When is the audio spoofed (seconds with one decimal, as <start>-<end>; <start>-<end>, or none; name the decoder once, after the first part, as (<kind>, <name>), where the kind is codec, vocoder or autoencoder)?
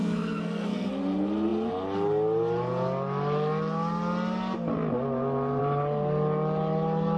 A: 0.0-0.9 (codec, SNAC)